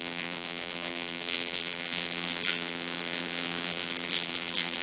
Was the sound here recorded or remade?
remade